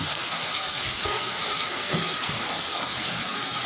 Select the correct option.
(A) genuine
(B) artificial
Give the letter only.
B